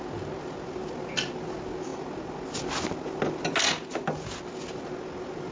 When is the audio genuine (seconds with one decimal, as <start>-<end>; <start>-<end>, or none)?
0.0-5.5